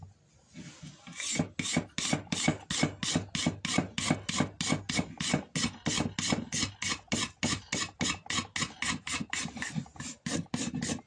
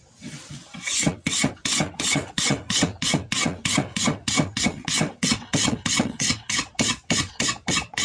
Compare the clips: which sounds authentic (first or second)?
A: first